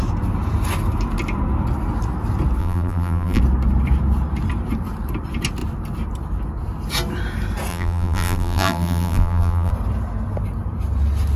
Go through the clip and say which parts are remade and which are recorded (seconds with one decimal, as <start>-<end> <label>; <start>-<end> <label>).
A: 0.0-2.6 recorded; 2.6-3.4 remade; 3.4-7.7 recorded; 7.7-9.7 remade; 9.7-11.4 recorded